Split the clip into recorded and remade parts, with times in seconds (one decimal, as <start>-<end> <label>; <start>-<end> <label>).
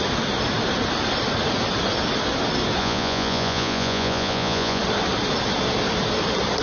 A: 0.0-2.8 recorded; 2.8-4.8 remade; 4.8-6.6 recorded